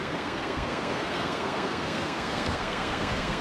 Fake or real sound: fake